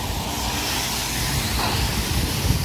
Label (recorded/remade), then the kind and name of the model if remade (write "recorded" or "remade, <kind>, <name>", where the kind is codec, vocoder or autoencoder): recorded